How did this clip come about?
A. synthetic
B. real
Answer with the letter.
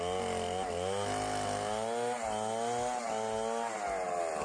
B